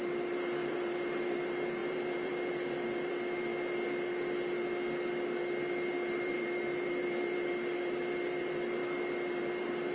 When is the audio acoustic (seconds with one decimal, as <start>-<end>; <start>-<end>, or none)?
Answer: 3.5-5.9; 8.8-9.4